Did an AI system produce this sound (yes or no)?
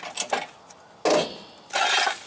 no